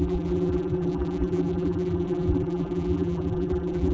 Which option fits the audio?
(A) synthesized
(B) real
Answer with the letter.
A